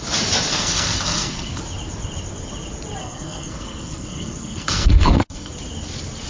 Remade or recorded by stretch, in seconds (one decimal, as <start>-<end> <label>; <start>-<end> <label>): 0.0-0.5 recorded; 0.5-1.6 remade; 1.6-3.0 recorded; 3.0-5.5 remade; 5.5-6.3 recorded